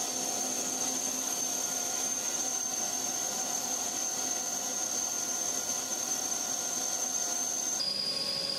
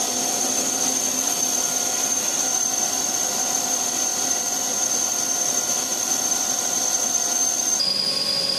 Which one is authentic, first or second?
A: first